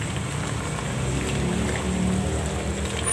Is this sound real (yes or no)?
yes